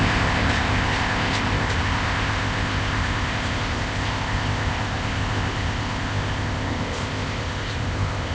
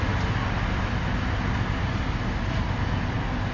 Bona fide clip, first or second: second